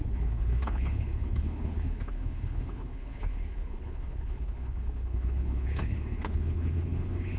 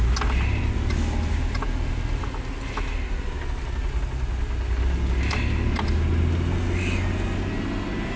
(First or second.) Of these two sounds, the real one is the second